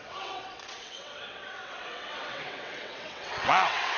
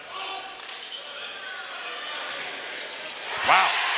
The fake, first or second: first